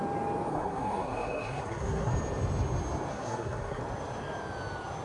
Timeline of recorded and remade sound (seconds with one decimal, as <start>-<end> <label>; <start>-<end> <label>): 0.0-0.5 recorded; 0.5-2.1 remade; 2.1-3.1 recorded; 3.1-3.8 remade; 3.8-5.0 recorded